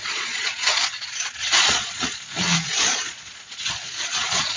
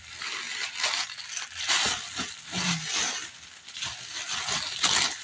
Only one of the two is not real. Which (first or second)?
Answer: first